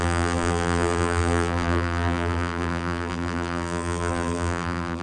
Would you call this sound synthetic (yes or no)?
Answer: yes